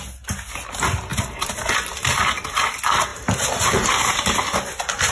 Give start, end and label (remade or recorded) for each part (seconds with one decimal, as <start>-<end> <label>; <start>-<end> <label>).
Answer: 0.0-1.1 recorded; 1.1-1.7 remade; 1.7-3.1 recorded; 3.1-4.4 remade; 4.4-5.1 recorded